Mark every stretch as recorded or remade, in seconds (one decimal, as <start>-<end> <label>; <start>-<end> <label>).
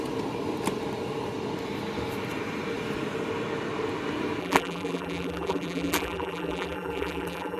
0.0-4.4 recorded; 4.4-7.6 remade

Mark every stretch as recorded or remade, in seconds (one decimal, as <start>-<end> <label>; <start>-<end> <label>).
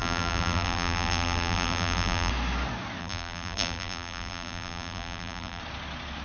0.0-2.3 remade; 2.3-3.0 recorded; 3.0-5.6 remade; 5.6-6.2 recorded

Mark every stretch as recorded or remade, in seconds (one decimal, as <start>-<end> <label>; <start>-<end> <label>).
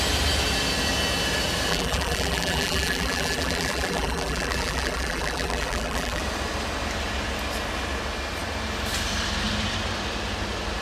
0.0-1.7 recorded; 1.7-6.2 remade; 6.2-10.8 recorded